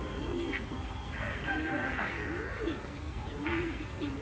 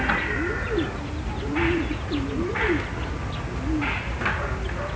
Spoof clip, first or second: first